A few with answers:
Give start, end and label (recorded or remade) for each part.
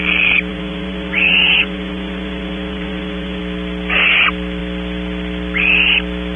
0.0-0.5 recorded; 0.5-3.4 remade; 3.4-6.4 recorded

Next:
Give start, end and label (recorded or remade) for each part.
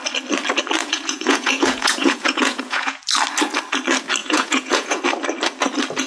0.0-0.8 recorded; 0.8-3.0 remade; 3.0-4.2 recorded; 4.2-5.0 remade; 5.0-6.1 recorded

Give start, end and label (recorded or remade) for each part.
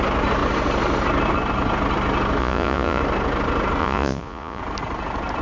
0.0-2.4 recorded; 2.4-3.0 remade; 3.0-3.8 recorded; 3.8-4.6 remade; 4.6-5.4 recorded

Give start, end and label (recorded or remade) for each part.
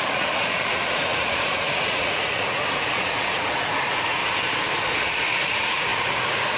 0.0-4.2 remade; 4.2-5.0 recorded; 5.0-6.6 remade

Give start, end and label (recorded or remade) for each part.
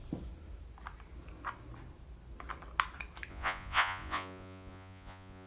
0.0-3.3 recorded; 3.3-5.5 remade